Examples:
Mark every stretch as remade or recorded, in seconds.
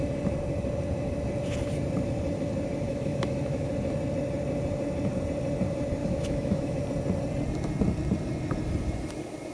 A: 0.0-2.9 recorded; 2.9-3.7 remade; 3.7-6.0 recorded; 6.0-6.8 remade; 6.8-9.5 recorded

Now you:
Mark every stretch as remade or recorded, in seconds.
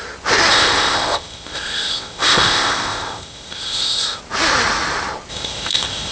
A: 0.0-0.5 recorded; 0.5-4.2 remade; 4.2-5.3 recorded; 5.3-6.1 remade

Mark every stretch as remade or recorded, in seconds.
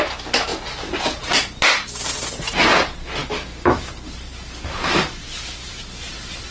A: 0.0-3.2 recorded; 3.2-3.9 remade; 3.9-5.2 recorded; 5.2-5.8 remade; 5.8-6.5 recorded